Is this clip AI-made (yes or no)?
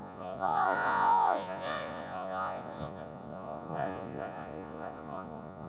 yes